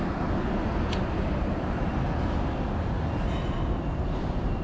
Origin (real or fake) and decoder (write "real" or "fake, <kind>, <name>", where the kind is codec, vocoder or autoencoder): real